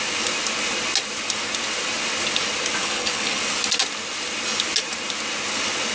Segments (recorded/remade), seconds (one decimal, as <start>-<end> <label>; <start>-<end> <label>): 0.0-2.8 recorded; 2.8-3.4 remade; 3.4-5.9 recorded